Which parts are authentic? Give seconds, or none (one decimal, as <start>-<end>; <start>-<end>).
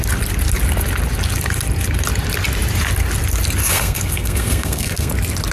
0.0-3.6; 5.1-5.5